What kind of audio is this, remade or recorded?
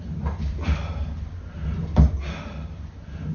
recorded